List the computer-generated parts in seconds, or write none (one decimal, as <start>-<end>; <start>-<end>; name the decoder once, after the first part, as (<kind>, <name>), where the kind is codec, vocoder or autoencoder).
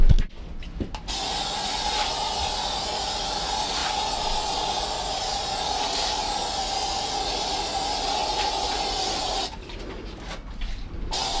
none